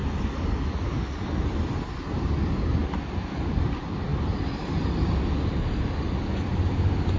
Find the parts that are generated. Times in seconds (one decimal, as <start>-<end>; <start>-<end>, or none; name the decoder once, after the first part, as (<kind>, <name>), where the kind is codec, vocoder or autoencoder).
none